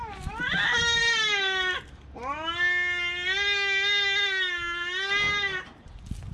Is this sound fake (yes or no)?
no